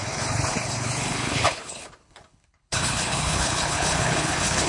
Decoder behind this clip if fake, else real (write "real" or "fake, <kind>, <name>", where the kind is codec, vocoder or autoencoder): fake, codec, HILCodec